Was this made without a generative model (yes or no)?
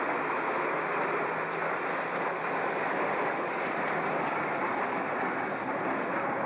yes